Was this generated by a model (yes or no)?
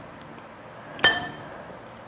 no